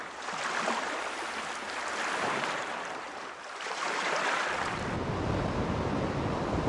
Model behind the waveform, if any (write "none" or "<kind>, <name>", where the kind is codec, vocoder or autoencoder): none